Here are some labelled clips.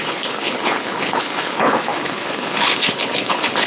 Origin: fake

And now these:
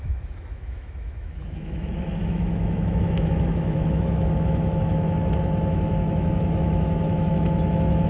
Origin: fake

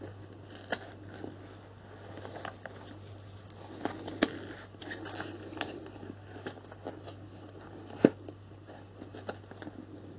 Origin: real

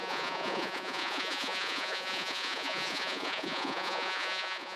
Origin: fake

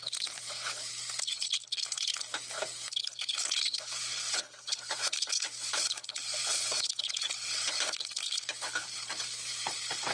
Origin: fake